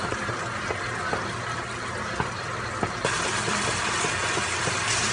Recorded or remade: recorded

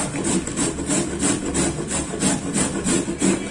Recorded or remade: recorded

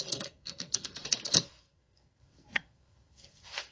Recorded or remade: remade